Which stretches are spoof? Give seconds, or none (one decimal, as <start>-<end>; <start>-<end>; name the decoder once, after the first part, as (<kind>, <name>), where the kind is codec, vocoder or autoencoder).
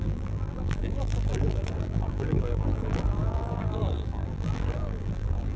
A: 0.0-5.6 (vocoder, BigVGAN v2)